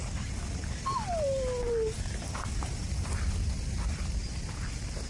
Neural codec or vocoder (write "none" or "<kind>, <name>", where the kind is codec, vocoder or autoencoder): none